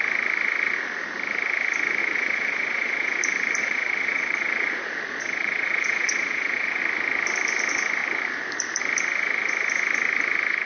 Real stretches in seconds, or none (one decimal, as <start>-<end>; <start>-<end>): 0.0-2.0; 3.2-3.6; 6.8-10.7